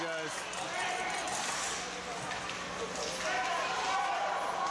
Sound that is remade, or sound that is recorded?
recorded